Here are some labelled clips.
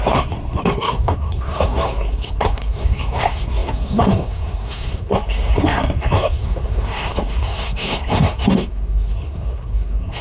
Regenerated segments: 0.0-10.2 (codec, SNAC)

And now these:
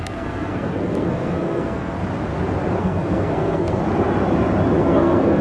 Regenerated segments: 0.0-2.0 (codec, SNAC); 2.8-3.8; 4.8-5.4

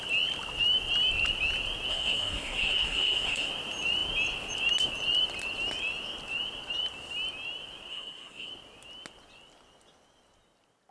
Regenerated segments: 1.9-3.5 (codec, SNAC); 7.9-8.5